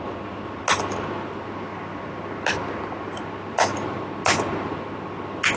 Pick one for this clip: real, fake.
real